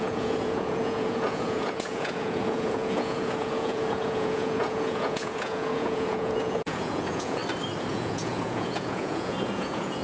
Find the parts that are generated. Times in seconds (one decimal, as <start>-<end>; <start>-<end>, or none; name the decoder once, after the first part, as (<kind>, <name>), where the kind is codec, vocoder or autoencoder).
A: 0.0-7.4 (vocoder, Vocos); 7.9-10.0